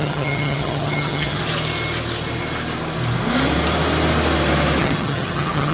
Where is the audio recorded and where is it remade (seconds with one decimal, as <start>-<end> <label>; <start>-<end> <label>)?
0.0-1.4 remade; 1.4-4.8 recorded; 4.8-5.7 remade